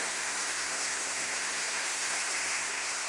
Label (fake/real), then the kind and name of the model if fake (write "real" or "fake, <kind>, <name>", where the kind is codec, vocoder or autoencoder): fake, codec, SNAC